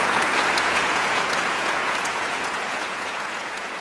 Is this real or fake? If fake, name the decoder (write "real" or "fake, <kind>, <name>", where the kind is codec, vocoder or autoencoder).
fake, vocoder, Vocos